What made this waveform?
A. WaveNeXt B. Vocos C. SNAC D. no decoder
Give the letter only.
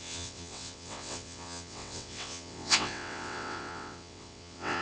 A